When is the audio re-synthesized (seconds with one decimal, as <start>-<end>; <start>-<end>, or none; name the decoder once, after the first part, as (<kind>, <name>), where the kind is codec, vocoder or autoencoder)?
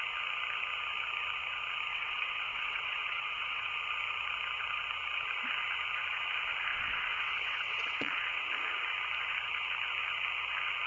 1.9-3.7 (vocoder, WaveNeXt); 6.7-8.5